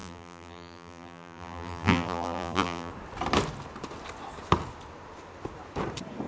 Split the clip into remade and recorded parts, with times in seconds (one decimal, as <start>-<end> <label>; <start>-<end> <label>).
0.0-2.9 remade; 2.9-6.3 recorded